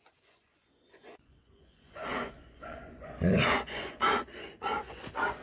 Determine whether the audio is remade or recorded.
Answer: remade